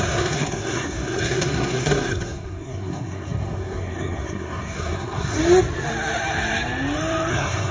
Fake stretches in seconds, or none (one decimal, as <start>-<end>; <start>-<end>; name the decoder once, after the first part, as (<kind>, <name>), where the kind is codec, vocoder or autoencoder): 0.0-5.4 (codec, SNAC); 7.3-7.7